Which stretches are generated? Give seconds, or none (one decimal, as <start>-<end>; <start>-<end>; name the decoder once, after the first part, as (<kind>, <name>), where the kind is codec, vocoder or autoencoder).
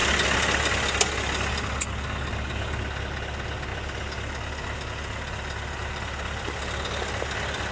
none